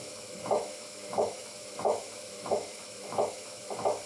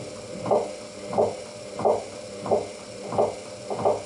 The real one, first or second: second